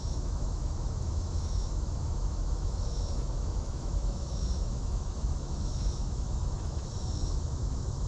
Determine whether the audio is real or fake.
fake